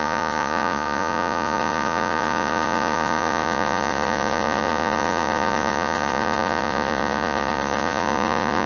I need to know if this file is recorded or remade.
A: remade